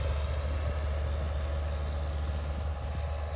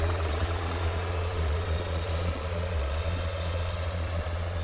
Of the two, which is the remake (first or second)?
second